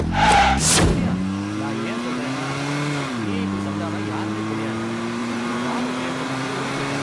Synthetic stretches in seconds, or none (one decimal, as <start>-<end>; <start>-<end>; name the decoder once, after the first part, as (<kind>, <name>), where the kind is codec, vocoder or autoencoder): 5.2-5.8 (vocoder, Vocos)